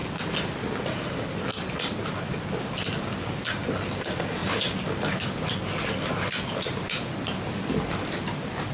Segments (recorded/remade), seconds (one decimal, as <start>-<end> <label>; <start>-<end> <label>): 0.0-8.7 recorded